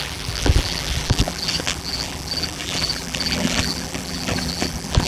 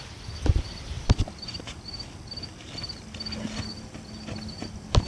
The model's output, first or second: first